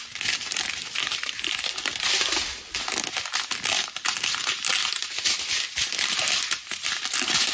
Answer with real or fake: real